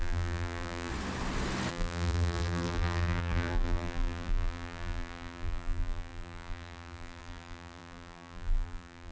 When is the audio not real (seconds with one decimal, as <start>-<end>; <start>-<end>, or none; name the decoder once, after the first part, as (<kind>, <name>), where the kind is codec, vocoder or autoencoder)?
0.0-0.9 (vocoder, BigVGAN v2); 1.7-9.1